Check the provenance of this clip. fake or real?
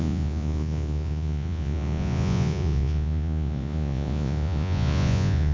fake